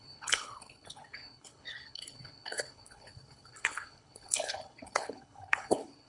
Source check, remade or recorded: remade